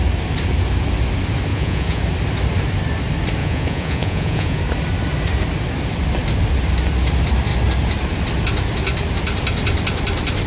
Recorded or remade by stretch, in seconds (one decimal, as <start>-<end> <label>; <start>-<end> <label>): 0.0-1.5 recorded; 1.5-2.0 remade; 2.0-3.4 recorded; 3.4-4.6 remade; 4.6-10.5 recorded